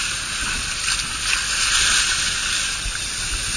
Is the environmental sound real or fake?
real